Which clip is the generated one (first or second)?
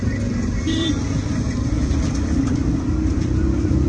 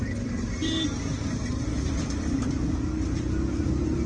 first